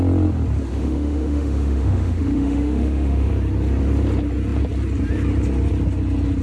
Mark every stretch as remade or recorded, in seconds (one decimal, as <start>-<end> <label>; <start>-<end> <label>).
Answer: 0.0-0.7 recorded; 0.7-3.3 remade; 3.3-6.4 recorded